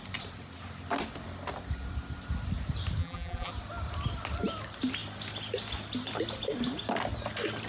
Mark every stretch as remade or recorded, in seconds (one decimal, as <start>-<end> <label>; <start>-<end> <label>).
0.0-3.0 recorded; 3.0-3.5 remade; 3.5-7.7 recorded